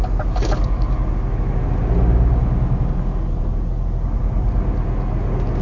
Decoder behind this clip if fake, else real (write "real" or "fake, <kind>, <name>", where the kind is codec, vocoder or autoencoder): real